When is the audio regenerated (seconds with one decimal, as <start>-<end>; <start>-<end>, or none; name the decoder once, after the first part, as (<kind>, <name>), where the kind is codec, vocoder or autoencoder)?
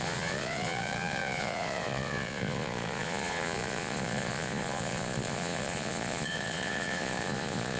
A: 0.0-7.8 (vocoder, Vocos)